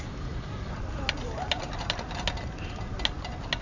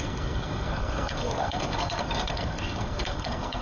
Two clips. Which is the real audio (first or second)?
first